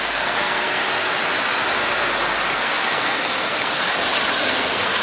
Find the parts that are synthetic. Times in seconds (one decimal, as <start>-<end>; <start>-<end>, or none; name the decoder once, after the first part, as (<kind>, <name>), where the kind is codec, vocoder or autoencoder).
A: 0.0-0.8 (codec, SNAC); 2.5-3.8; 4.4-5.0

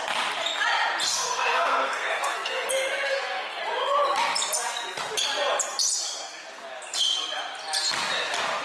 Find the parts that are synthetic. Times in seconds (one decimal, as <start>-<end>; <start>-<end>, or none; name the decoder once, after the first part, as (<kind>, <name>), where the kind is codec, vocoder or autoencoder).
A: 1.1-2.7 (codec, SNAC); 3.1-3.6

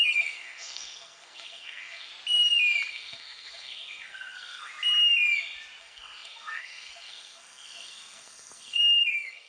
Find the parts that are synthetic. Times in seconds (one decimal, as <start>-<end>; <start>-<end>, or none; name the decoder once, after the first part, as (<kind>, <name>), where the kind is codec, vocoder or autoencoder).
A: 0.0-2.1 (codec, SNAC); 2.9-4.7; 5.8-9.5

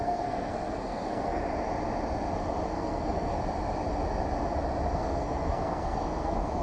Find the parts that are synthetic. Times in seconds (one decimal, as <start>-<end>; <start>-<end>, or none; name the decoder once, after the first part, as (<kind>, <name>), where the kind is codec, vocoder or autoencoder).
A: 0.0-1.4 (codec, SNAC); 2.7-3.4; 4.9-6.6